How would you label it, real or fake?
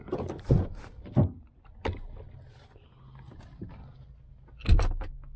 real